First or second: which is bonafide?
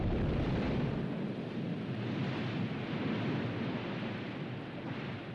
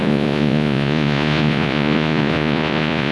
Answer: first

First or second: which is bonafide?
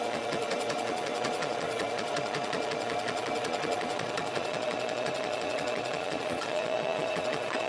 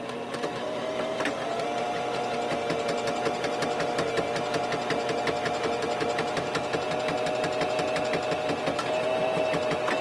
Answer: second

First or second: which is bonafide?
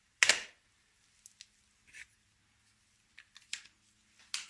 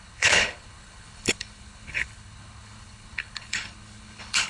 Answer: first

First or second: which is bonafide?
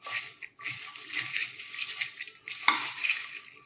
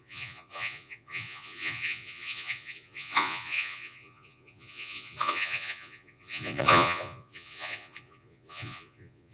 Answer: first